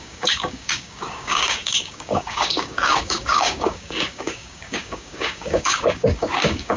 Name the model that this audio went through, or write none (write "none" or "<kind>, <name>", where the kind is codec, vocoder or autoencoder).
codec, DAC